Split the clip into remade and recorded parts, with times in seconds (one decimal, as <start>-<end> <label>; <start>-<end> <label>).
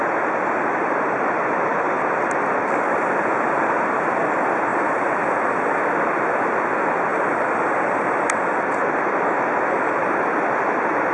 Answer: 0.0-4.7 recorded; 4.7-5.8 remade; 5.8-7.1 recorded; 7.1-8.4 remade; 8.4-11.1 recorded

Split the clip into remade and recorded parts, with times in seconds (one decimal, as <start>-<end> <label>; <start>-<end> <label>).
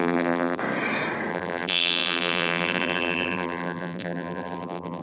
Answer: 0.0-0.6 remade; 0.6-1.3 recorded; 1.3-5.0 remade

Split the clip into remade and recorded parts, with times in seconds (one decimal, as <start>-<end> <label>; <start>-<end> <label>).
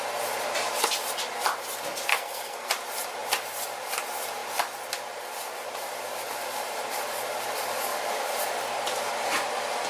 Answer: 0.0-2.1 recorded; 2.1-2.7 remade; 2.7-9.9 recorded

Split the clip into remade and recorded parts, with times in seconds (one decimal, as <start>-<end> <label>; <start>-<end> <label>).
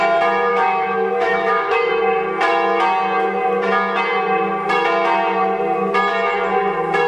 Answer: 0.0-0.5 recorded; 0.5-1.9 remade; 1.9-7.1 recorded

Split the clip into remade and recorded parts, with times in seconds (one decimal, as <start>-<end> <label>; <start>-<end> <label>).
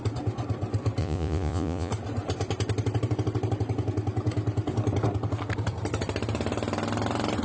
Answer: 0.0-1.0 recorded; 1.0-1.9 remade; 1.9-7.4 recorded